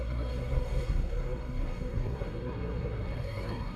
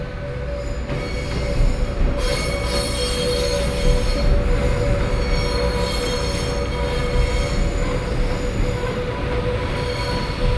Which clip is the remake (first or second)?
first